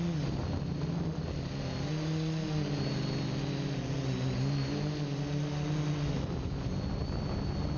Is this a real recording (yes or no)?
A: yes